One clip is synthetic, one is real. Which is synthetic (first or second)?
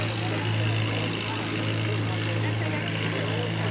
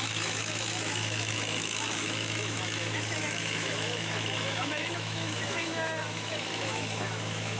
second